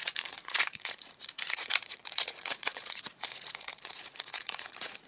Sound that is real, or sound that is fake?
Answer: fake